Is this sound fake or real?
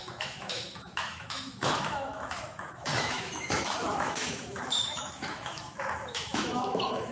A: fake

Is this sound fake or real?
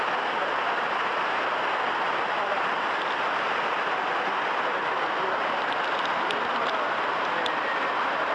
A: real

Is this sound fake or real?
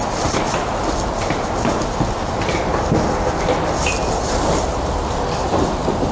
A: real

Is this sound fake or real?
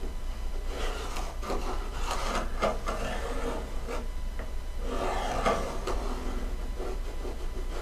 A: real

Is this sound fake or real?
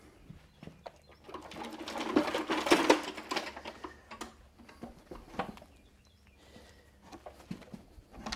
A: real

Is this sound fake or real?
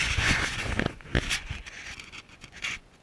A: fake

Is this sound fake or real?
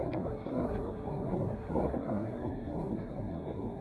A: fake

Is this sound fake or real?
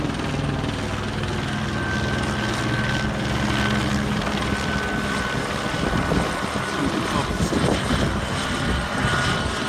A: real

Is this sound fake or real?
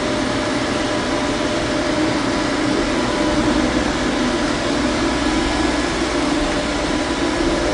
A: real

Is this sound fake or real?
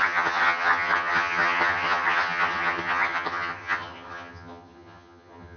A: fake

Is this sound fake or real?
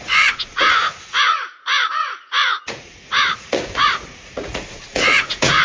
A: fake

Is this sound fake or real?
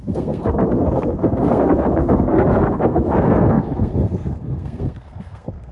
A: fake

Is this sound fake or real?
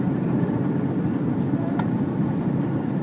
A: real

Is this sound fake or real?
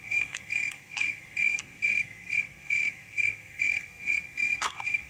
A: fake